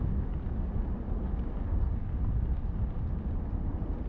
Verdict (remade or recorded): recorded